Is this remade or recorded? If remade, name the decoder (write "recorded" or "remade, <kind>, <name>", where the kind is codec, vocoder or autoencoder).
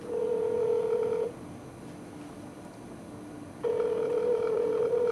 recorded